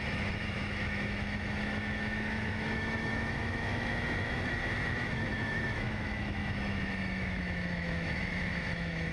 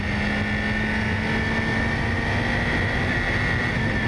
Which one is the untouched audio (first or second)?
second